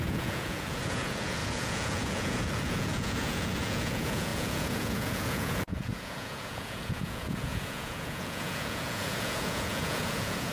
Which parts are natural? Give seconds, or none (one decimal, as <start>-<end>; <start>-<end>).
none